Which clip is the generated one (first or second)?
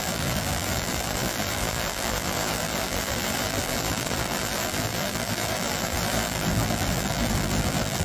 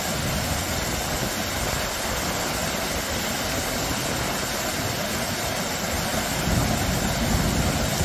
first